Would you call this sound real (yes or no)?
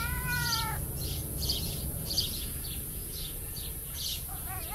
no